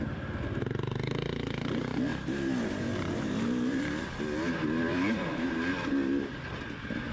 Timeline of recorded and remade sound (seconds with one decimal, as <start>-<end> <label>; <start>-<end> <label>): 0.0-2.1 recorded; 2.1-4.1 remade; 4.1-4.9 recorded; 4.9-5.5 remade; 5.5-7.1 recorded